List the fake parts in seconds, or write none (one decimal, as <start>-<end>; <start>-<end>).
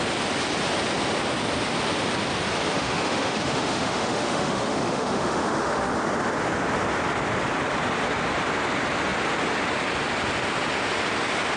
2.7-5.9